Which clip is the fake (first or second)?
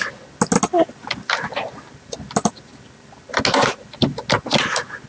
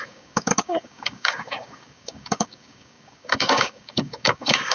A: second